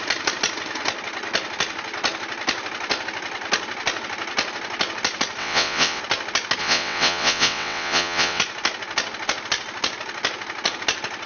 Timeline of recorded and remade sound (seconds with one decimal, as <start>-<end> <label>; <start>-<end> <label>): 0.0-5.4 recorded; 5.4-6.0 remade; 6.0-6.6 recorded; 6.6-8.4 remade; 8.4-11.3 recorded

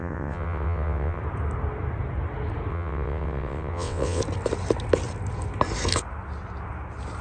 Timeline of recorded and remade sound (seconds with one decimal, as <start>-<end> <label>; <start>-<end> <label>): 0.0-1.2 remade; 1.2-2.7 recorded; 2.7-4.2 remade; 4.2-7.2 recorded

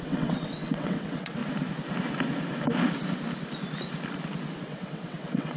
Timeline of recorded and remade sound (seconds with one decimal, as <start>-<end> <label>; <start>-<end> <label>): 0.0-1.4 remade; 1.4-4.6 recorded; 4.6-5.6 remade

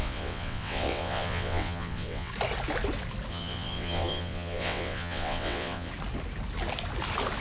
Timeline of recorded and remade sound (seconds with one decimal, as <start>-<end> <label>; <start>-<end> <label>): 0.0-2.3 remade; 2.3-3.3 recorded; 3.3-5.9 remade; 5.9-7.4 recorded

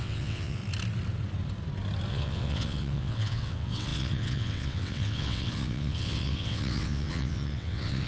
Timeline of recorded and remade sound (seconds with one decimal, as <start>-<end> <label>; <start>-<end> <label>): 0.0-0.6 remade; 0.6-2.1 recorded; 2.1-8.1 remade

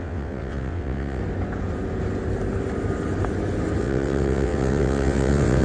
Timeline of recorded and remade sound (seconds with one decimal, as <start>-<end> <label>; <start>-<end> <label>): 0.0-1.2 remade; 1.2-3.8 recorded; 3.8-5.6 remade